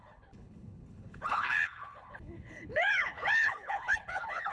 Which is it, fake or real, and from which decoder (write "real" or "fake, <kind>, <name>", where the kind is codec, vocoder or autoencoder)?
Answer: fake, codec, HILCodec